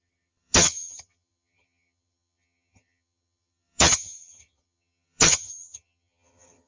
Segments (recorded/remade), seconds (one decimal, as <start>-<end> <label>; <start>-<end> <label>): 0.0-6.7 remade